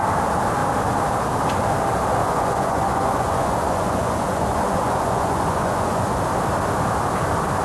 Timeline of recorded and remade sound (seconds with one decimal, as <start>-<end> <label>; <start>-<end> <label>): 0.0-2.2 recorded; 2.2-6.2 remade; 6.2-7.6 recorded